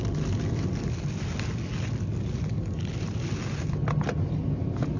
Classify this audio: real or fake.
real